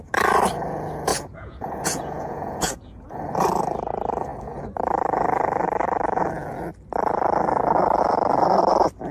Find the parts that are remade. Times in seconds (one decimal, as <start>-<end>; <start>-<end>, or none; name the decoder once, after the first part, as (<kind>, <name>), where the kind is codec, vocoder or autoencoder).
1.1-3.2 (vocoder, Vocos)